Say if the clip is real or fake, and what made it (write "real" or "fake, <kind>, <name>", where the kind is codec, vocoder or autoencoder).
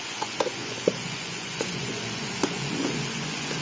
fake, vocoder, Vocos